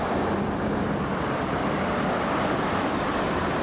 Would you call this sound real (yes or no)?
no